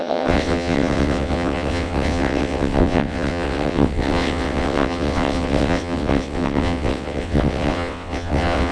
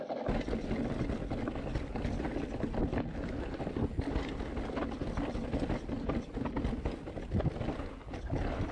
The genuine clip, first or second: second